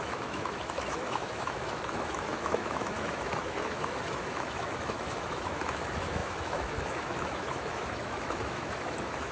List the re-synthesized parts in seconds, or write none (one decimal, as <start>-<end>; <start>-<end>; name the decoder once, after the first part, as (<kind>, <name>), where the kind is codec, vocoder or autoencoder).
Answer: 0.0-9.3 (autoencoder, DAC-VAE)

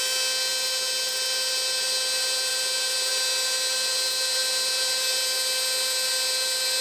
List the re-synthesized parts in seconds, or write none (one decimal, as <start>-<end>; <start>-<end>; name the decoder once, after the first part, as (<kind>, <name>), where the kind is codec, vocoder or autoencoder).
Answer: none

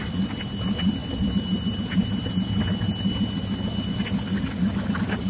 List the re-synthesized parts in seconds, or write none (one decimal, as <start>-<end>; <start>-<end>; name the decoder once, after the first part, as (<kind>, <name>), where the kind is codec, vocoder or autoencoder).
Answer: none

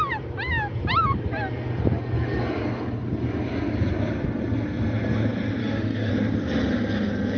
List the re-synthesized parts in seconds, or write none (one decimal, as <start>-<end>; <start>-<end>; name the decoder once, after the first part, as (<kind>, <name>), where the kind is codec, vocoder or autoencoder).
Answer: 5.6-6.1 (autoencoder, DAC-VAE)

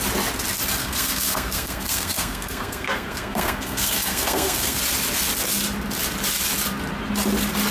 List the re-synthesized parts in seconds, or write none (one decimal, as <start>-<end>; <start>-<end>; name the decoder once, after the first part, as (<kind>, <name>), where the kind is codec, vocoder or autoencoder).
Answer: 0.8-4.8 (codec, SNAC)